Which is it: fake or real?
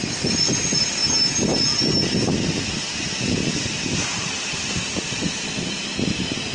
real